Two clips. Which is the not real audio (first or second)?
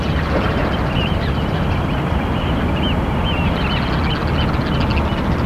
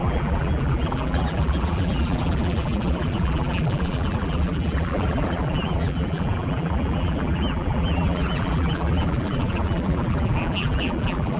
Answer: second